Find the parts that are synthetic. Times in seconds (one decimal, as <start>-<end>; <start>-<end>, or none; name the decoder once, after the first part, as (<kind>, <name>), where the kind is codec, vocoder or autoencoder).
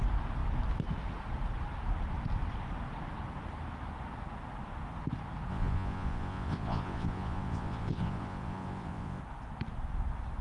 5.5-9.2 (vocoder, Vocos)